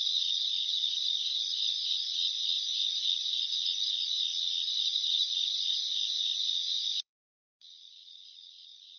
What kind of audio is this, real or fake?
fake